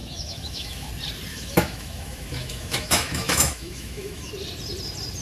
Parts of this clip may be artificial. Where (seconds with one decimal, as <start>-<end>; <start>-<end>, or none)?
0.0-0.9; 1.3-4.3